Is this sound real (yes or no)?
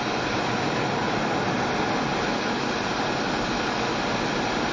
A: yes